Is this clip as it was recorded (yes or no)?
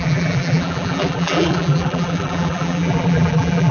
no